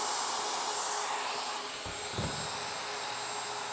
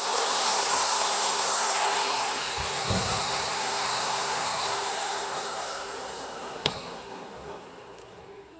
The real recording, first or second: first